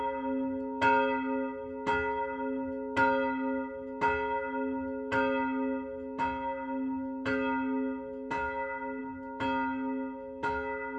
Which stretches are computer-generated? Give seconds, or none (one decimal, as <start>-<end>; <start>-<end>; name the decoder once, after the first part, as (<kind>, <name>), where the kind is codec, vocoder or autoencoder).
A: none